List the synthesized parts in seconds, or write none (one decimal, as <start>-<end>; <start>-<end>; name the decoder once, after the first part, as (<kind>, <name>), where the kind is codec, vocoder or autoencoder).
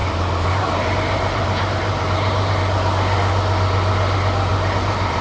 0.0-2.6 (vocoder, BigVGAN v2); 4.5-5.2